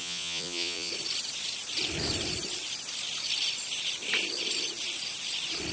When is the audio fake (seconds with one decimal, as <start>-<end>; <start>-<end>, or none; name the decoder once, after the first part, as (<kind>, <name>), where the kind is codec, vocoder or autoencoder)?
0.0-0.9 (vocoder, Vocos)

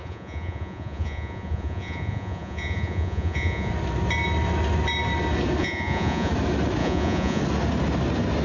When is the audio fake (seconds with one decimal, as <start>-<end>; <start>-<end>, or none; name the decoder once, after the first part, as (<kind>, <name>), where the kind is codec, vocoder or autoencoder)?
0.0-3.7 (vocoder, Vocos); 5.6-6.3; 6.8-7.4

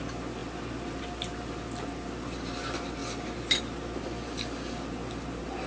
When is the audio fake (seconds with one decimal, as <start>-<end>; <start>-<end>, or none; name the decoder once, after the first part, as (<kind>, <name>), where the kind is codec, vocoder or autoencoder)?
none

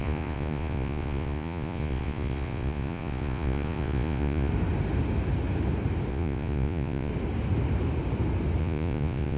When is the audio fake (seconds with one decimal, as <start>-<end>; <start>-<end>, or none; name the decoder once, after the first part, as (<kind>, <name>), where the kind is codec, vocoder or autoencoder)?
0.0-4.5 (vocoder, Vocos); 6.1-7.1; 8.6-9.4

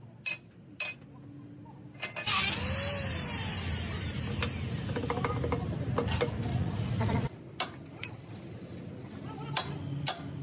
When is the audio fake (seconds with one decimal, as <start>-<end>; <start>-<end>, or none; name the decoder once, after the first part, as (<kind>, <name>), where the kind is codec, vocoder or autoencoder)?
6.5-7.4 (vocoder, Vocos)

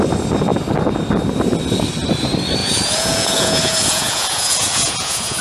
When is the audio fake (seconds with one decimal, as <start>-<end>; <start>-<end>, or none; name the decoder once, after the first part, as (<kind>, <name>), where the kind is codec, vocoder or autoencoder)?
2.6-5.4 (vocoder, Vocos)

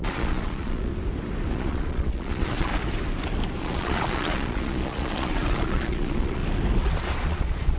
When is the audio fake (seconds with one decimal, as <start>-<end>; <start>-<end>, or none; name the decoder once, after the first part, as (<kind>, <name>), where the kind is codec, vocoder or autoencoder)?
0.0-0.9 (vocoder, Vocos); 1.5-2.7; 3.6-6.4; 7.0-7.8